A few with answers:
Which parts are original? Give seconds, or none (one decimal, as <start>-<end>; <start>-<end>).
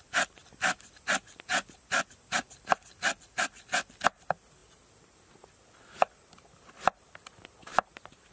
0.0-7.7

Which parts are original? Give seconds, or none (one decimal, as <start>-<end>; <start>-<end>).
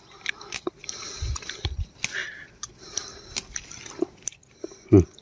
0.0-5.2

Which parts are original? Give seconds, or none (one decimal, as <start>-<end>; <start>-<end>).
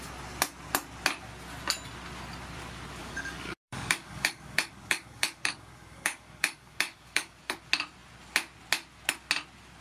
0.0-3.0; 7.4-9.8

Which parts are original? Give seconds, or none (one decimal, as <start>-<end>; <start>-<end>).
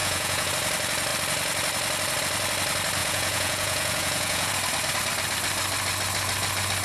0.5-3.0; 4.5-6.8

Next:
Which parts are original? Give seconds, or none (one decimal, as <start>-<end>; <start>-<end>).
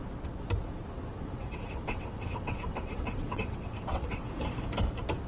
0.0-1.1; 4.3-5.3